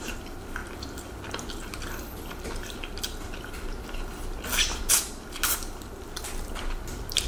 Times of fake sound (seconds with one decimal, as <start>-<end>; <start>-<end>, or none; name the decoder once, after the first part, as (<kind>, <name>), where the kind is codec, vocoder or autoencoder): none